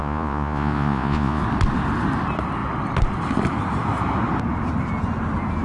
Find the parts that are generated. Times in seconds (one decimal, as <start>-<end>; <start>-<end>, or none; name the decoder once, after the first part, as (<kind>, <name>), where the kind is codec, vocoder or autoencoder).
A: 0.0-1.4 (vocoder, Vocos)